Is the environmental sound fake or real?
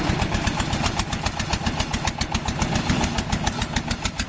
real